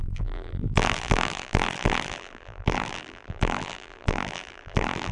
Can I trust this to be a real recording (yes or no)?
no